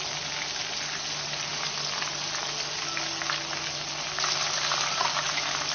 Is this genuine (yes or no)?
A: yes